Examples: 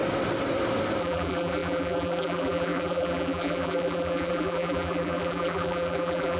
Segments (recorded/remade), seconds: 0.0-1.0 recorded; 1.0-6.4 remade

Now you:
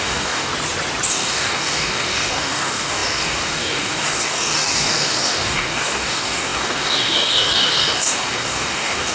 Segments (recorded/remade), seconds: 0.0-0.5 remade; 0.5-1.1 recorded; 1.1-9.1 remade